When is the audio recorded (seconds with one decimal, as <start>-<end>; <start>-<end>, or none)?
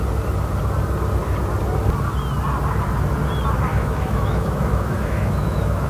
0.0-3.7